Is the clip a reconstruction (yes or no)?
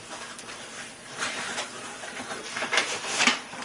yes